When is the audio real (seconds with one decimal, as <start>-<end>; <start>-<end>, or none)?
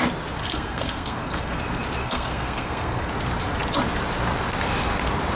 0.0-0.4; 1.6-2.0; 3.1-5.4